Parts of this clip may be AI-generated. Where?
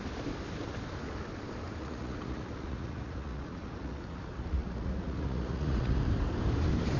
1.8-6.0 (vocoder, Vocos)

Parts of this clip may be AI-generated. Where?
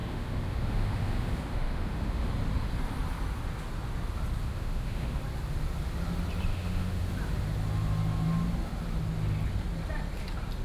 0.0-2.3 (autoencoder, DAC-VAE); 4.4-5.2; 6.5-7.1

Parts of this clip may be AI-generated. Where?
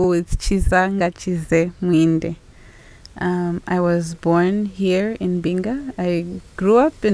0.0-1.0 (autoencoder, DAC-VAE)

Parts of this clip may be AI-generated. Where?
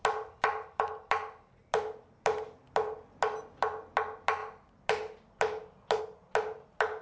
none